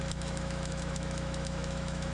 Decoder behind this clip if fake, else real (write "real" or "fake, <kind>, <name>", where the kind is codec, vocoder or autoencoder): fake, autoencoder, DAC-VAE